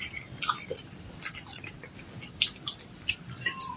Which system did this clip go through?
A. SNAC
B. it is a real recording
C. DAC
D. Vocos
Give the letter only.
B